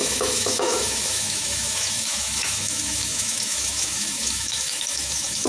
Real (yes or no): no